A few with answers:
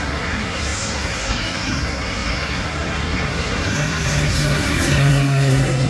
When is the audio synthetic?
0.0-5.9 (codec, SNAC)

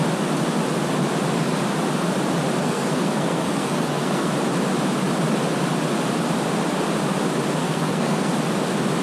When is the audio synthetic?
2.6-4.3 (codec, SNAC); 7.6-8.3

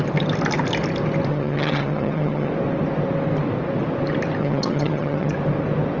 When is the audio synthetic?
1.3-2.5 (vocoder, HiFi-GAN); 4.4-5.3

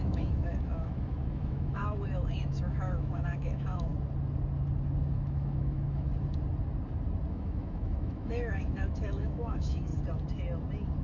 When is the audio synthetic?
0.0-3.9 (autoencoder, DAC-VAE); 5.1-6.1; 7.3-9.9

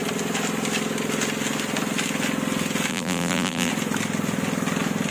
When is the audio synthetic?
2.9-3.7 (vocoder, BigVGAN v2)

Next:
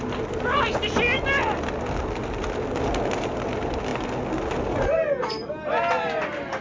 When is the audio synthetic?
none

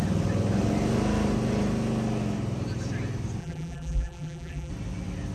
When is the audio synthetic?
3.4-4.7 (vocoder, BigVGAN v2)